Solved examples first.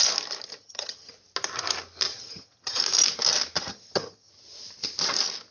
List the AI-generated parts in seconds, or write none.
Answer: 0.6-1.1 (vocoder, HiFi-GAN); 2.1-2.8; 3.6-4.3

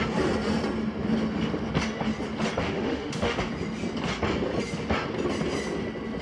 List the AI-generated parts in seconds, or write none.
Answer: 2.6-3.5 (autoencoder, DAC-VAE)

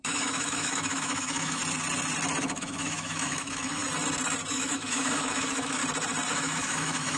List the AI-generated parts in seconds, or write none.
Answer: 0.0-1.6 (autoencoder, DAC-VAE); 2.4-3.8; 4.5-5.8; 6.3-7.2